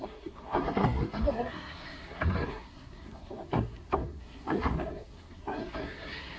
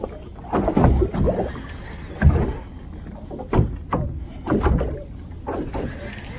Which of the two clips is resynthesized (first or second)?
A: first